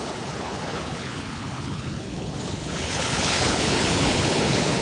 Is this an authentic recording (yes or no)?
no